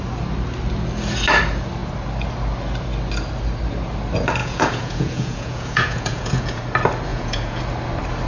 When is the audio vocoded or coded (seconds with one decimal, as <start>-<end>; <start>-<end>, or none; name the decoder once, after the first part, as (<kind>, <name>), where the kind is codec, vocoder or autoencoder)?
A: 4.4-6.6 (vocoder, Vocos); 7.1-7.6